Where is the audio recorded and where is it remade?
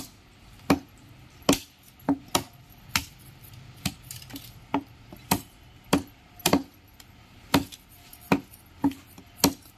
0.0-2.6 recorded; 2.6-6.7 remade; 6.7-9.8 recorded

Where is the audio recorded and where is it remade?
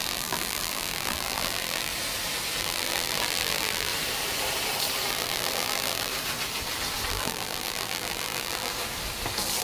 0.0-1.9 remade; 1.9-2.6 recorded; 2.6-3.9 remade; 3.9-5.1 recorded; 5.1-6.1 remade; 6.1-7.1 recorded; 7.1-8.7 remade; 8.7-9.6 recorded